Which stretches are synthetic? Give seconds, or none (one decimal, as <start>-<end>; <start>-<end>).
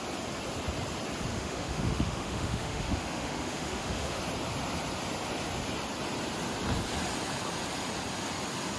1.3-4.2